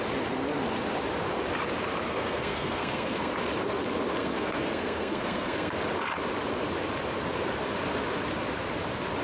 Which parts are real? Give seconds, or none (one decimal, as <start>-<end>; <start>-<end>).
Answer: 0.0-2.1; 3.3-4.2; 5.8-9.2